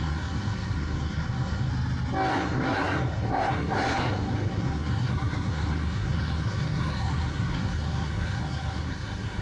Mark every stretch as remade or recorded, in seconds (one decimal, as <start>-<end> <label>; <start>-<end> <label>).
0.0-1.7 remade; 1.7-2.3 recorded; 2.3-9.4 remade